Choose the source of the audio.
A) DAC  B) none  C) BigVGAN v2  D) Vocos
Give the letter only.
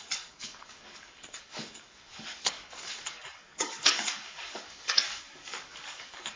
A